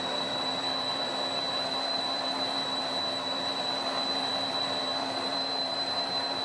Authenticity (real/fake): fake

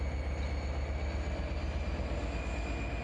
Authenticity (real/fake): real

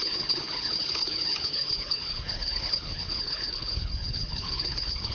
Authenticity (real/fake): fake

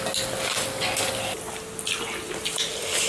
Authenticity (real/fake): real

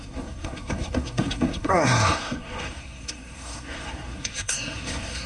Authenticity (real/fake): fake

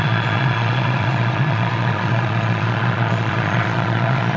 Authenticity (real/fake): fake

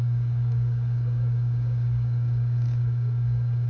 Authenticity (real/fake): fake